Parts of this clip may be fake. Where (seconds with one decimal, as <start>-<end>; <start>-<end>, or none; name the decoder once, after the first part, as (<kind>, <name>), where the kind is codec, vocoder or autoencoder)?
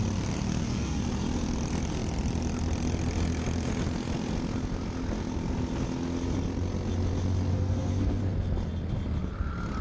0.5-1.0 (codec, SNAC); 7.5-8.2